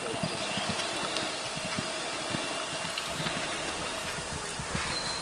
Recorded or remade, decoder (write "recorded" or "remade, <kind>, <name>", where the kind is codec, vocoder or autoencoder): recorded